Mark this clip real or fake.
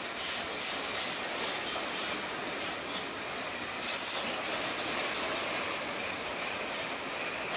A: real